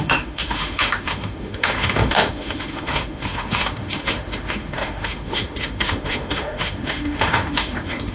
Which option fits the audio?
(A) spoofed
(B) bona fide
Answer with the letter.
A